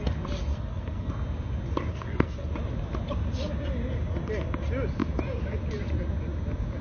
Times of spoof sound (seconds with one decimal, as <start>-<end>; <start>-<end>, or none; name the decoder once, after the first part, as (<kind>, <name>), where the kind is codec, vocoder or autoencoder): 0.5-1.1 (codec, SNAC); 1.9-2.5